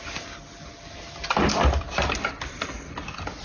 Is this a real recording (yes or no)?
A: no